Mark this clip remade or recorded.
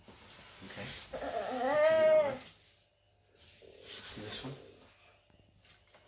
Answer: recorded